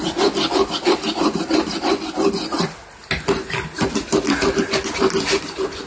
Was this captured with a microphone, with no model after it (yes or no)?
yes